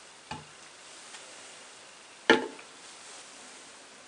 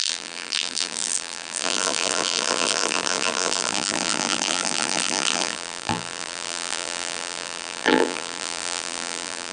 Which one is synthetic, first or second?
second